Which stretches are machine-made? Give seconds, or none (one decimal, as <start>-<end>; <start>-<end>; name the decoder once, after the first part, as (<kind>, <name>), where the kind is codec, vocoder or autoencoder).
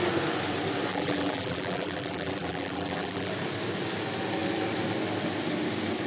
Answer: 0.9-3.3 (vocoder, BigVGAN v2)